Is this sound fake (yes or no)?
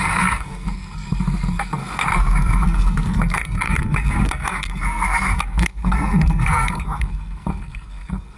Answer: yes